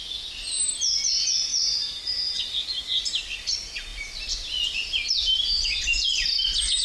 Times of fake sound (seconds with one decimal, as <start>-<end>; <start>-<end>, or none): none